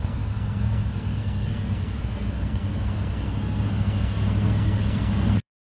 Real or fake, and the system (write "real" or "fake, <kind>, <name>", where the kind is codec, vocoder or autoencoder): fake, codec, SNAC